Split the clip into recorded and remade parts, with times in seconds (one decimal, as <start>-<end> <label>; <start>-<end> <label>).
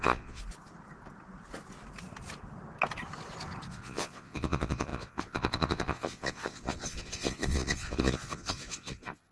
0.0-0.4 remade; 0.4-3.7 recorded; 3.7-9.3 remade